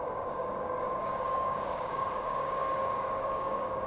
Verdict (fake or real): fake